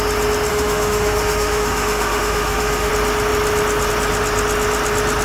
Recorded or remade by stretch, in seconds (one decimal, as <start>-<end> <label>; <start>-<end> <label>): 0.0-0.5 recorded; 0.5-2.9 remade; 2.9-5.2 recorded